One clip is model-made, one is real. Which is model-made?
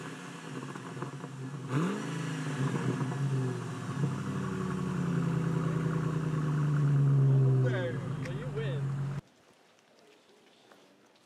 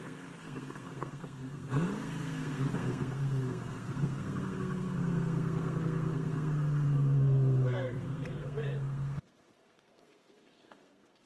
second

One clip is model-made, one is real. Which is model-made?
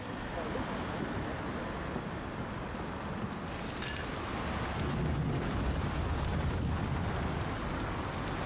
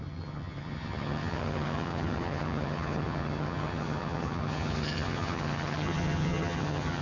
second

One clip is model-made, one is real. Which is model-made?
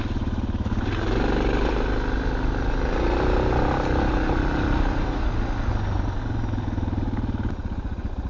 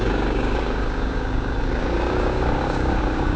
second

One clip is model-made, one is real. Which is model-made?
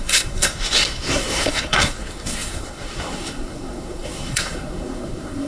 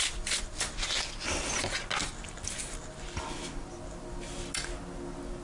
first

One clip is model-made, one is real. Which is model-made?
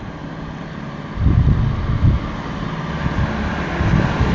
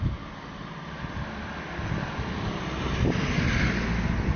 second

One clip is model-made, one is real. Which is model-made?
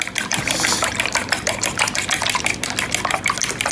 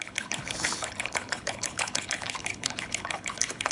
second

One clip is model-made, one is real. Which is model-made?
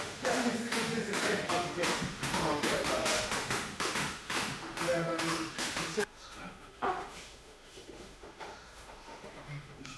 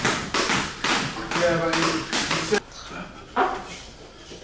first